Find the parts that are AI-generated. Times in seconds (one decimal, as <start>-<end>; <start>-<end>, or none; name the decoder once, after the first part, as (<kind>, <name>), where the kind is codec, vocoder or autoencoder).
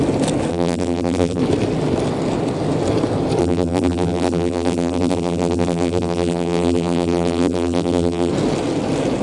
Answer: 0.5-1.4 (vocoder, BigVGAN v2); 3.4-8.3